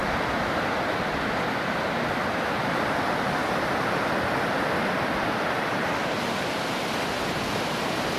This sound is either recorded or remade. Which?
recorded